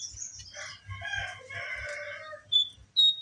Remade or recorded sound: recorded